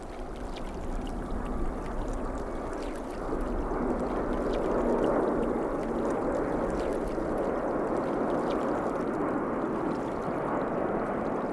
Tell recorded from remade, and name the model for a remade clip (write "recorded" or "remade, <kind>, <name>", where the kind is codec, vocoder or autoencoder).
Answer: recorded